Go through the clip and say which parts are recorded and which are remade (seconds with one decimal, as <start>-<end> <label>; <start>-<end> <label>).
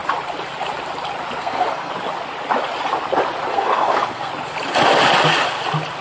0.0-1.4 recorded; 1.4-1.9 remade; 1.9-3.5 recorded; 3.5-4.3 remade; 4.3-6.0 recorded